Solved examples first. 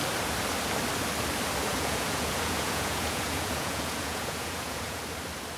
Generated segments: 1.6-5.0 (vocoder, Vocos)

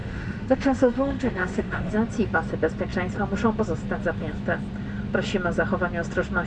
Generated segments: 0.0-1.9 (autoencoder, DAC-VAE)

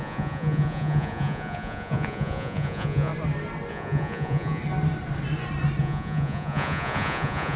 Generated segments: 0.0-3.1 (vocoder, Vocos); 3.7-4.6; 5.8-7.6

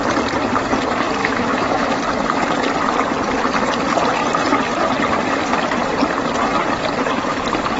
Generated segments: 1.2-2.0 (autoencoder, DAC-VAE)